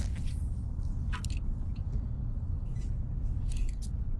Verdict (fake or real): real